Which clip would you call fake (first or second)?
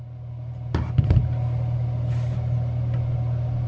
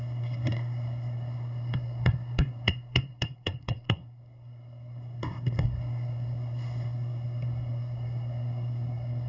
second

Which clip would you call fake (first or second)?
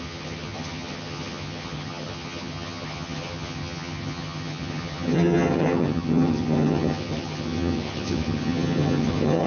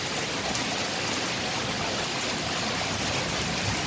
first